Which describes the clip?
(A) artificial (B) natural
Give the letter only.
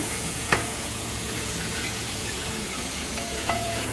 A